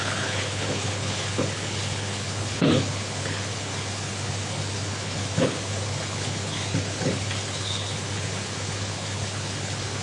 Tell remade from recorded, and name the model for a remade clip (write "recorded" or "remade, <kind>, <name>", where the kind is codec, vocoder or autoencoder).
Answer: remade, codec, HILCodec